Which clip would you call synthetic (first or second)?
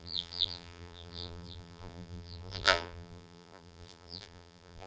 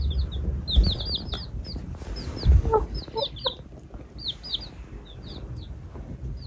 first